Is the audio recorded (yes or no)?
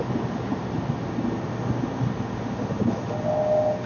yes